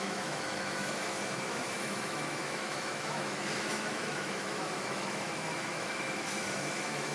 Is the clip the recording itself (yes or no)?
no